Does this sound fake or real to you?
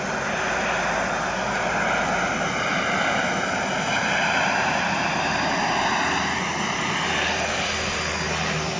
real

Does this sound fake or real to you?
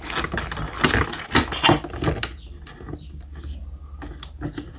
real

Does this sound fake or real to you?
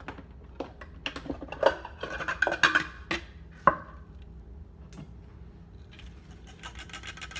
real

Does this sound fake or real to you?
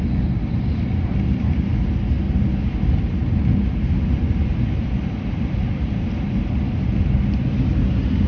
real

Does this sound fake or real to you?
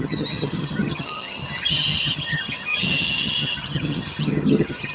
fake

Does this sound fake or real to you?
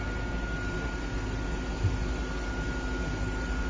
real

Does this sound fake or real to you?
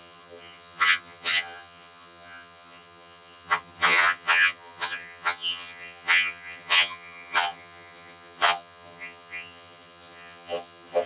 fake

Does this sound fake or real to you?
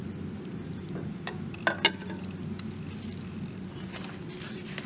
real